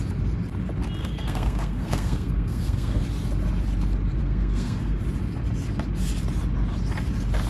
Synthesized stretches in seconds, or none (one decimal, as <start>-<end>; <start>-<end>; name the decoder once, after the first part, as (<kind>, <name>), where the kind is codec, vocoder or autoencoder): 1.0-3.0 (codec, SNAC); 4.2-5.0